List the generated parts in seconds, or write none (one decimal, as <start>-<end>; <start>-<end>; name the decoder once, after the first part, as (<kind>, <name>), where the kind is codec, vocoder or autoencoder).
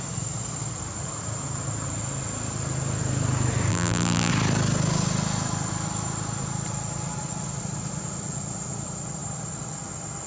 3.7-4.3 (vocoder, BigVGAN v2)